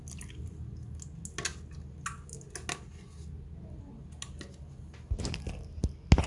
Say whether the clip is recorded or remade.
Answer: recorded